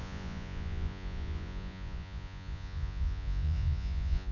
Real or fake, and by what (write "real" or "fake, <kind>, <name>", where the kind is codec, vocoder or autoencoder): fake, vocoder, Vocos